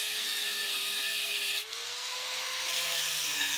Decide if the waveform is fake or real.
fake